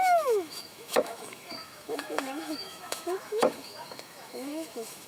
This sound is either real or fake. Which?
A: fake